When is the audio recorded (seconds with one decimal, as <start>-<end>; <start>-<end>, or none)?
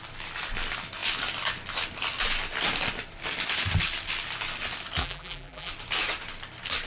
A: 0.0-5.0; 5.7-6.9